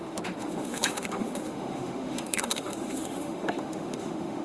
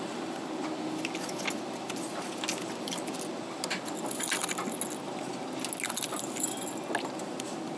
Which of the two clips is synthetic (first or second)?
first